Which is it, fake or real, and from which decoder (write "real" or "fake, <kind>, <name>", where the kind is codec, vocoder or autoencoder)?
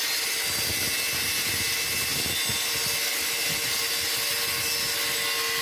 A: real